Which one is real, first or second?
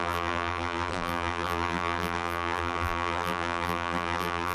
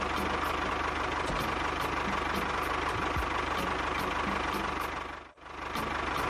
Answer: second